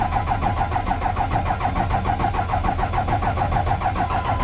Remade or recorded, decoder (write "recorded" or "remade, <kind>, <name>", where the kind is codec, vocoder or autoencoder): recorded